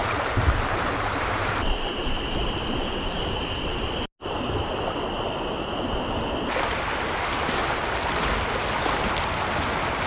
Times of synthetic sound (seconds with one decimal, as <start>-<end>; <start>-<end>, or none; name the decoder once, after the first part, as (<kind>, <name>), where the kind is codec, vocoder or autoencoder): 0.0-3.9 (vocoder, BigVGAN v2)